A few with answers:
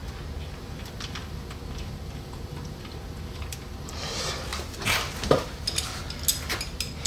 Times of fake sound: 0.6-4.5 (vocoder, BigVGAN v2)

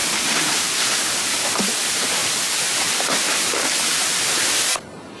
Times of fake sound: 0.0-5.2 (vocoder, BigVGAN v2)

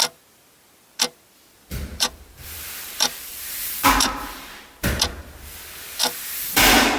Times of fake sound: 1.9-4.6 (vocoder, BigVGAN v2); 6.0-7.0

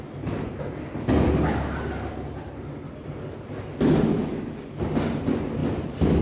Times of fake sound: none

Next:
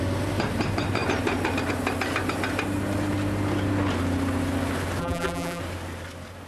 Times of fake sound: 5.0-5.6 (vocoder, BigVGAN v2)

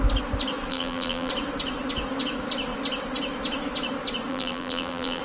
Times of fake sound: 0.7-1.3 (vocoder, BigVGAN v2); 4.3-5.2